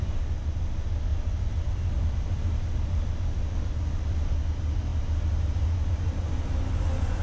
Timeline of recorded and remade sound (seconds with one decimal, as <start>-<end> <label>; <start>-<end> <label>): 0.0-7.2 recorded